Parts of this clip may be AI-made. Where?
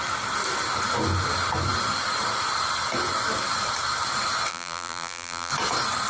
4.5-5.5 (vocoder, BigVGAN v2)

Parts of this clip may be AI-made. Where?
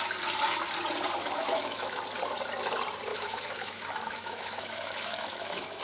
1.2-2.0 (autoencoder, DAC-VAE); 3.1-5.8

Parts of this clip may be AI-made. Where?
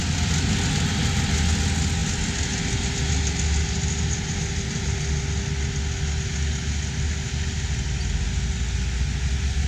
none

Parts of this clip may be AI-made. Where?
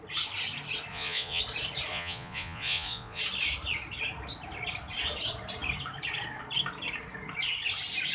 0.9-1.4 (vocoder, Vocos); 1.9-3.2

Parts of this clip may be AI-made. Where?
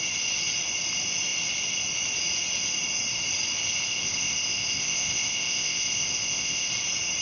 3.8-6.7 (codec, ZipCodec)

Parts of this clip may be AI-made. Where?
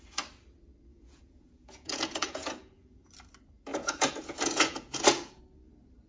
0.9-3.1 (vocoder, Vocos); 3.7-5.4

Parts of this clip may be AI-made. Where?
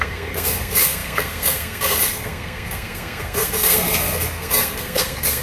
0.0-5.4 (codec, SNAC)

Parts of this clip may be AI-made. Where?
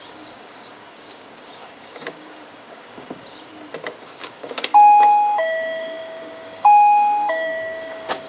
0.0-3.5 (codec, DAC); 4.0-8.3